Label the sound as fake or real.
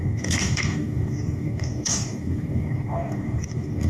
fake